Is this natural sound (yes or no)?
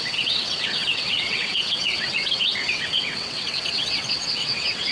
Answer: no